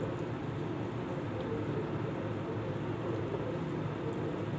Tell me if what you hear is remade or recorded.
recorded